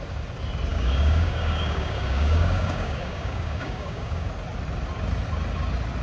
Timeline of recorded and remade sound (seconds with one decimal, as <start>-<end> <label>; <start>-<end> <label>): 0.0-0.7 recorded; 0.7-4.3 remade; 4.3-6.0 recorded